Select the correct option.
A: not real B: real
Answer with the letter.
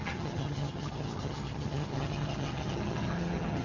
A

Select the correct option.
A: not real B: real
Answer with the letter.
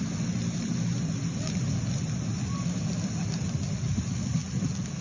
B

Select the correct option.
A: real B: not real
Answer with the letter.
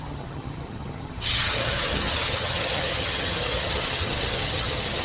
B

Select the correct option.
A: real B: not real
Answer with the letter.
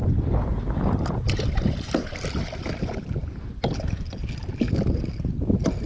A